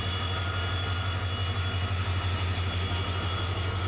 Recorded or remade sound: recorded